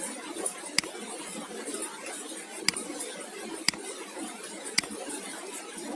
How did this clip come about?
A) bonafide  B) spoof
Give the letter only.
A